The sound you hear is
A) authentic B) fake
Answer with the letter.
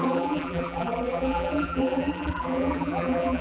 B